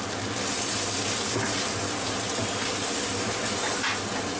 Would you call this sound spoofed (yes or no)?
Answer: no